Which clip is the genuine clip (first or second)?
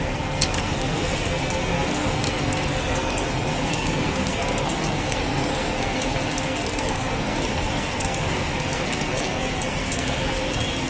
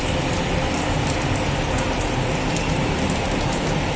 second